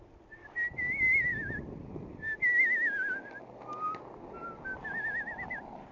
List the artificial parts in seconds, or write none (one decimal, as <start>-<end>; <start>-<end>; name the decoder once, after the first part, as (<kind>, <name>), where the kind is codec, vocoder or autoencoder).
none